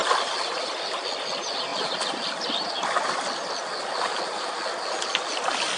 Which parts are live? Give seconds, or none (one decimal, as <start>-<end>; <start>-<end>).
0.0-5.8